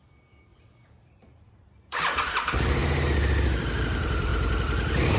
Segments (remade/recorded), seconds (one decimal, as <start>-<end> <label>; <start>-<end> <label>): 0.0-2.8 remade; 2.8-3.8 recorded; 3.8-4.3 remade; 4.3-5.2 recorded